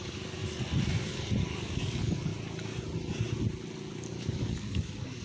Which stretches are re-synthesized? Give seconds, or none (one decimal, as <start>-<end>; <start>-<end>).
0.0-0.4; 1.4-2.3; 3.9-5.2